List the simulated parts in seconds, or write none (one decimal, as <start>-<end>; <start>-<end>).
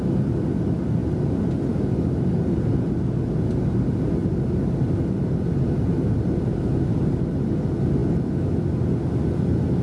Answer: none